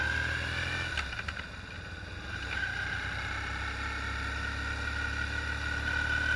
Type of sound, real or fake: real